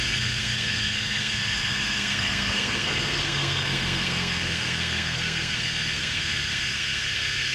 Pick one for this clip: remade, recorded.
remade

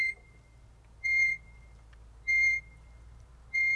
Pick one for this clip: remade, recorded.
recorded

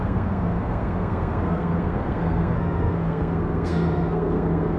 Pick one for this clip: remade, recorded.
remade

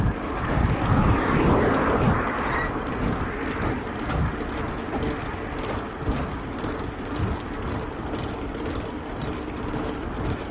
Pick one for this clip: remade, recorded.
recorded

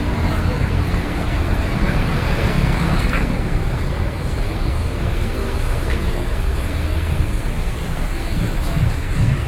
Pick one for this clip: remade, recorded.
remade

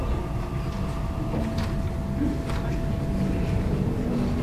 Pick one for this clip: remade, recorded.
recorded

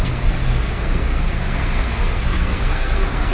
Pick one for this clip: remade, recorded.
remade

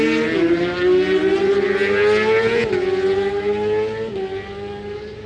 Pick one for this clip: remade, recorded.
recorded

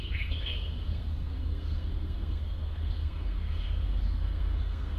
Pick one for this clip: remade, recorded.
remade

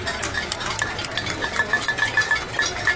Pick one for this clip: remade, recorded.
recorded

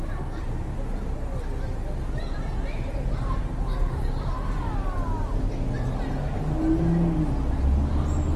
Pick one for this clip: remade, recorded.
recorded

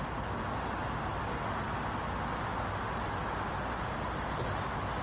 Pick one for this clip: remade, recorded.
recorded